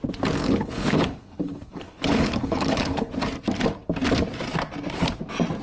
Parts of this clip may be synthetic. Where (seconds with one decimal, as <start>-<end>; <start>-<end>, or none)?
0.4-3.1